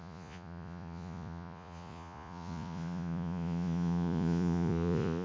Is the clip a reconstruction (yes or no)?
yes